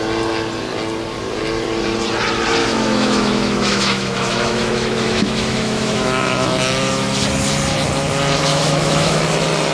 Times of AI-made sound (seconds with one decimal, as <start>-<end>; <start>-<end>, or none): 2.6-6.6; 8.5-9.2